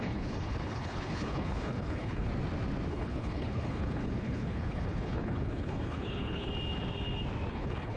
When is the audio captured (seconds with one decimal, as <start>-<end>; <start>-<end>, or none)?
2.3-2.9; 6.5-7.5